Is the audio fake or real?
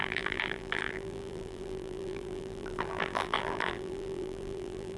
fake